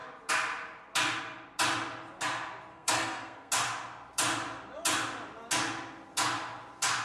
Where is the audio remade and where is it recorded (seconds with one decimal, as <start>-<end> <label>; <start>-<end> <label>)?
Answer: 0.0-2.7 recorded; 2.7-3.5 remade; 3.5-7.0 recorded

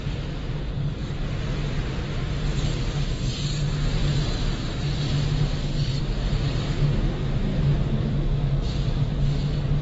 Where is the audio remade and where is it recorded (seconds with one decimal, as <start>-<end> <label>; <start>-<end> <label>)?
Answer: 0.0-7.5 recorded; 7.5-8.4 remade; 8.4-9.8 recorded